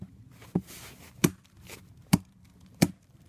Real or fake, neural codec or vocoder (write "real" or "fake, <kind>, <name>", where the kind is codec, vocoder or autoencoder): real